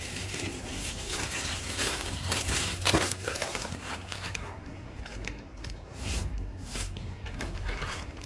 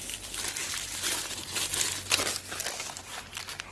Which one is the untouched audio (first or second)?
second